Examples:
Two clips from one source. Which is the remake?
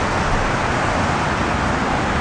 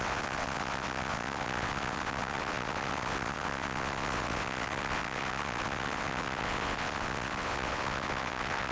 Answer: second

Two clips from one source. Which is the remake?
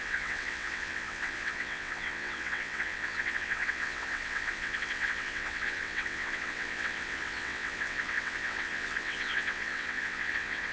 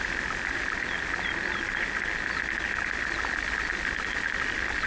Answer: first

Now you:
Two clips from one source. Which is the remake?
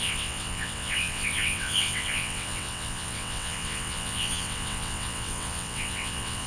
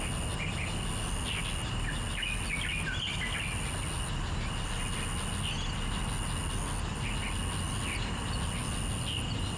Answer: first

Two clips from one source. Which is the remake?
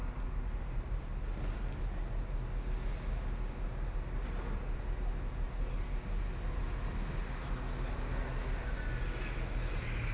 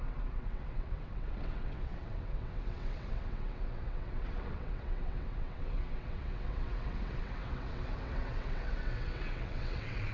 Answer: second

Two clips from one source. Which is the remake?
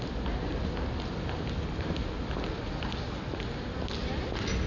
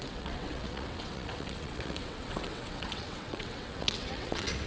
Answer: second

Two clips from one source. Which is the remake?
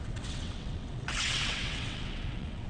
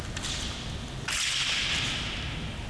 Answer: first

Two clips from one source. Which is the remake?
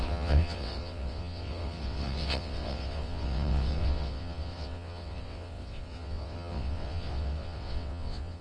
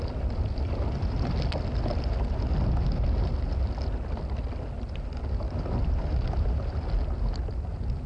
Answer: first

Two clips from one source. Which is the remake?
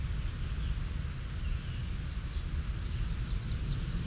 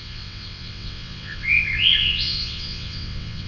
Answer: second